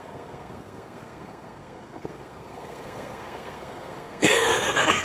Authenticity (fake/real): fake